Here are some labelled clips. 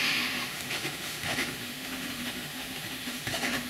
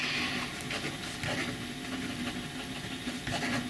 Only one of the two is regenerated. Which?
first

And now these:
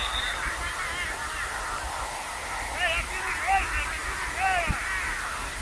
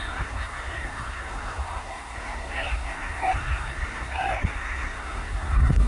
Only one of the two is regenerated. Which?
second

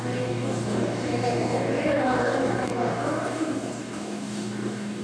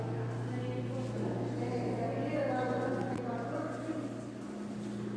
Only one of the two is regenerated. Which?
first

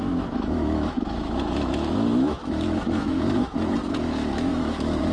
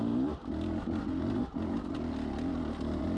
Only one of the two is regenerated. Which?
first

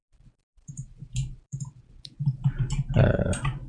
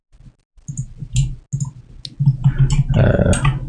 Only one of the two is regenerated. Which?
first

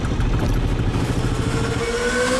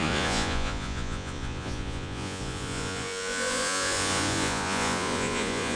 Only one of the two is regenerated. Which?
second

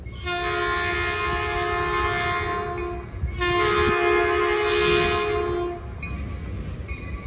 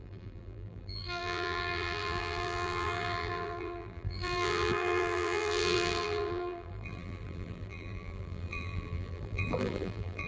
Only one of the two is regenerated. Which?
second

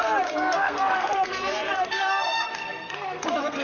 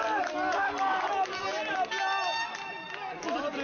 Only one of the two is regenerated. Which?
first